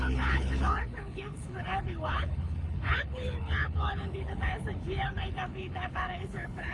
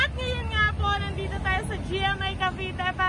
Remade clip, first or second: first